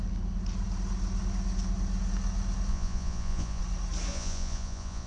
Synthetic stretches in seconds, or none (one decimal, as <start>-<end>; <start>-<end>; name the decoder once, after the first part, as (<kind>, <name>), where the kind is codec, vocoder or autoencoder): 2.7-3.6 (vocoder, Vocos); 4.1-5.1